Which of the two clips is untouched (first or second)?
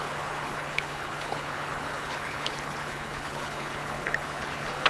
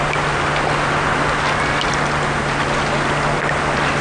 second